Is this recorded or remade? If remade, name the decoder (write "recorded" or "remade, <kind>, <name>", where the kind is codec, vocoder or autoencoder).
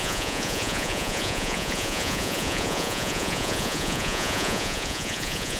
remade, vocoder, Vocos